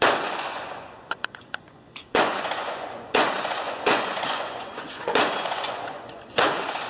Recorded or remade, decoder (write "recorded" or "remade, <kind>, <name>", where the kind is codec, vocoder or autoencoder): remade, vocoder, Vocos